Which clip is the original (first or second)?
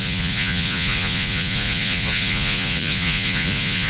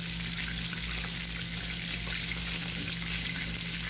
second